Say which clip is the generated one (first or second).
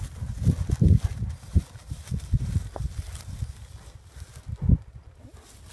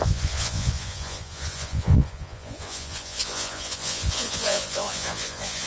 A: second